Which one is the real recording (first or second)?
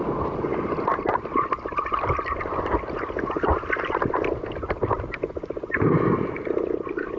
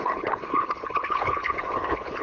first